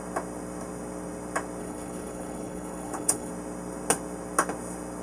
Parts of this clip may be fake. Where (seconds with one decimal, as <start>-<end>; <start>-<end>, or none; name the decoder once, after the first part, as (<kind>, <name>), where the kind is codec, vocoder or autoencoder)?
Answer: 1.6-3.3 (codec, HILCodec)